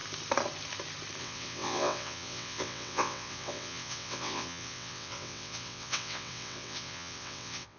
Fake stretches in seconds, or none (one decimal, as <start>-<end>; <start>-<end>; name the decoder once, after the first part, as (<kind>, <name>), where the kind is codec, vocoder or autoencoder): 1.2-7.8 (vocoder, WaveNeXt)